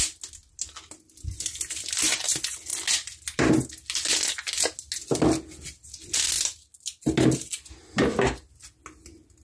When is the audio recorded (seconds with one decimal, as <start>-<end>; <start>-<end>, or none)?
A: 0.0-9.4